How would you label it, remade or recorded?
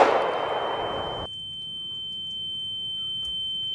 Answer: recorded